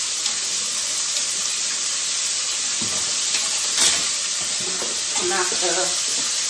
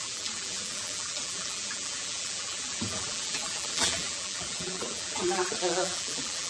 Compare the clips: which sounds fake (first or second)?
second